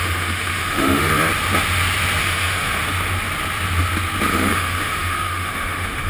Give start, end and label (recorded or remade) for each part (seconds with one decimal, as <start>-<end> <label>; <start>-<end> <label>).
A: 0.0-1.1 remade; 1.1-2.2 recorded; 2.2-2.8 remade; 2.8-4.3 recorded; 4.3-6.1 remade